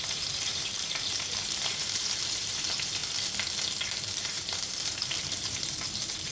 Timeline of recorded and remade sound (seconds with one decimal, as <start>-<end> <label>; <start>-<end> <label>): 0.0-3.0 remade; 3.0-4.1 recorded; 4.1-6.3 remade